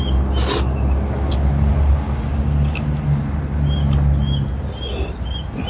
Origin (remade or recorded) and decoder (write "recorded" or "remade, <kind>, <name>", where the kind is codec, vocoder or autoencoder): recorded